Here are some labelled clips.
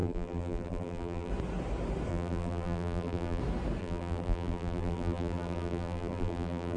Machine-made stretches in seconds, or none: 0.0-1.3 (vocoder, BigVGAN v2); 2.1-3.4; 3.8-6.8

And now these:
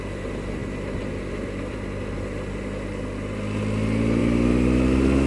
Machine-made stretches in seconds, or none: none

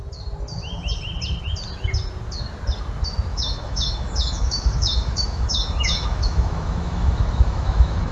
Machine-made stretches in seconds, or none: 3.3-8.1 (autoencoder, DAC-VAE)

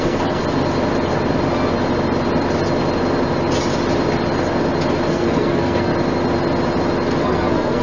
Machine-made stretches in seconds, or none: 0.0-0.4 (codec, SNAC); 5.1-5.9; 7.2-7.8

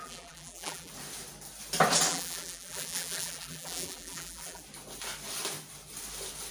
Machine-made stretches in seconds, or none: 0.0-0.9 (vocoder, BigVGAN v2); 2.1-4.6

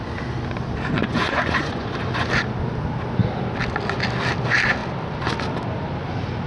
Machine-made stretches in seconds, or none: 1.0-2.3 (vocoder, Vocos)